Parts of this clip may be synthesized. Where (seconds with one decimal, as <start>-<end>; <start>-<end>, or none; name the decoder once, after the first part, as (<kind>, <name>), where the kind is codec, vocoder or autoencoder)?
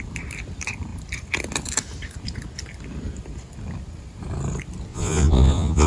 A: 4.9-5.9 (vocoder, Vocos)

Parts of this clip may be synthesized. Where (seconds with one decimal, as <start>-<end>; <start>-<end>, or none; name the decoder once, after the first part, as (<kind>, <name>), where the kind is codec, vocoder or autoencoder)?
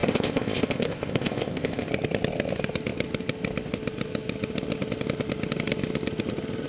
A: 0.0-1.9 (codec, ZipCodec)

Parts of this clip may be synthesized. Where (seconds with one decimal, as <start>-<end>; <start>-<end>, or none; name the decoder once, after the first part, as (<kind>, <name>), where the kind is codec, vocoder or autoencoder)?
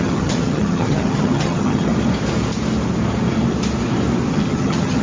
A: 0.0-1.9 (vocoder, HiFi-GAN); 4.3-5.0